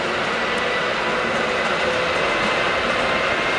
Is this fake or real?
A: real